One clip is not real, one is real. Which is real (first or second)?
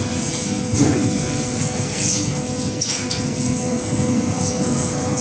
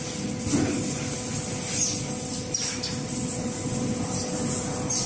second